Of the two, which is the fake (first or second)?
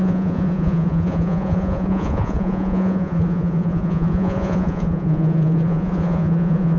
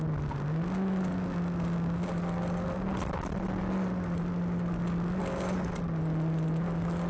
first